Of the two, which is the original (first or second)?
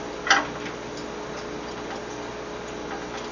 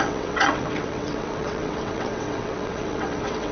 first